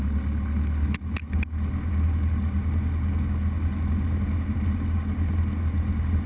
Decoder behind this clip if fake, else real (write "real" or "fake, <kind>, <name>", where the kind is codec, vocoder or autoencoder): real